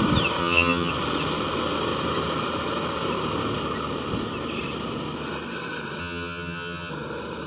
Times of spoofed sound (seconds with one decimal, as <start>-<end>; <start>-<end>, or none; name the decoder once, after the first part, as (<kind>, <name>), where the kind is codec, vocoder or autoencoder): 0.4-0.9 (vocoder, HiFi-GAN); 6.0-6.9